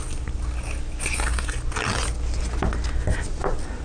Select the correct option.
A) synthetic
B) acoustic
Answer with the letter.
B